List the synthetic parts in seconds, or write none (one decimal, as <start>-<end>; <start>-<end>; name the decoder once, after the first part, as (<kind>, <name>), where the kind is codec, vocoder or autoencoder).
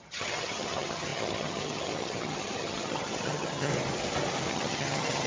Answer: 0.0-3.7 (vocoder, HiFi-GAN); 4.5-5.3